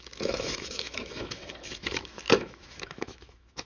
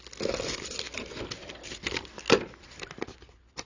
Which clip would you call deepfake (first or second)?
first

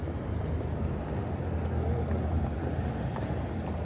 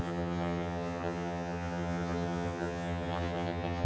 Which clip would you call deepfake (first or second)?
second